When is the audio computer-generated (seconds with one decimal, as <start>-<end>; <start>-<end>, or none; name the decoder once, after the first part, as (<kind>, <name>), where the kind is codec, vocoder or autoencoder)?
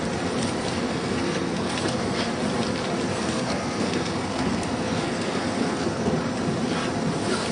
0.9-2.2 (codec, SNAC); 3.1-6.1